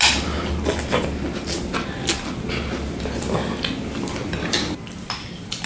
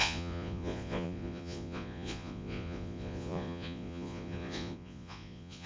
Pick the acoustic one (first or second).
first